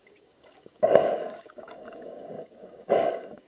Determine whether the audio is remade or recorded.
remade